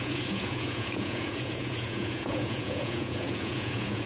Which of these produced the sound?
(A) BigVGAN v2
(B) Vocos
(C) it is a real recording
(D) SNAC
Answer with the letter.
B